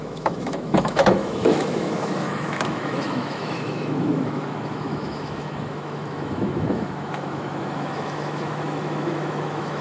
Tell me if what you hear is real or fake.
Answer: fake